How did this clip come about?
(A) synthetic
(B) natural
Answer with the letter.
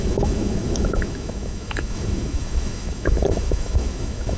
A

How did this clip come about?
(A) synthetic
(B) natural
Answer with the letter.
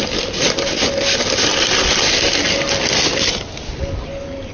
B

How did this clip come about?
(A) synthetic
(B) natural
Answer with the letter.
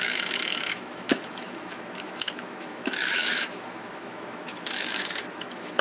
A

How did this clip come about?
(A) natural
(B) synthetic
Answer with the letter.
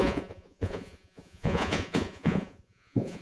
B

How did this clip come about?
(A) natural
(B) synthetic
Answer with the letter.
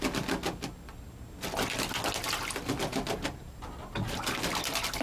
A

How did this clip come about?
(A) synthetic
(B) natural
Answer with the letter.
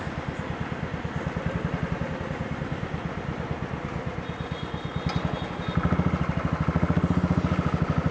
B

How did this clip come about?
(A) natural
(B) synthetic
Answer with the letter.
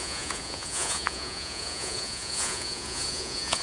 B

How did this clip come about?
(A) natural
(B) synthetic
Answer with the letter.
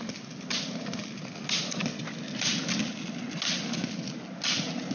A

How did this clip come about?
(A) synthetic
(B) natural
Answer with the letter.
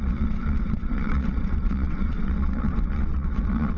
A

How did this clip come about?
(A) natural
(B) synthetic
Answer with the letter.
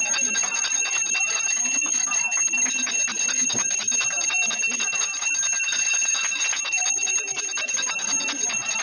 A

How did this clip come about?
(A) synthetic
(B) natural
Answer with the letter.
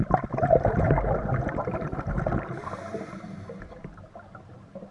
B